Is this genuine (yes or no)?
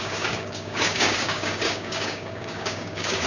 no